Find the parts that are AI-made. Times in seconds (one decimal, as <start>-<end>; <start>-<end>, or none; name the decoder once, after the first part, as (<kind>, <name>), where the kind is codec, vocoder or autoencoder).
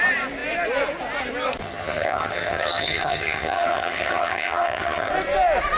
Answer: 1.6-5.1 (vocoder, HiFi-GAN)